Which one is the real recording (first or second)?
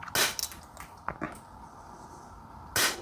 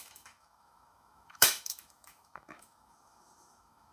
first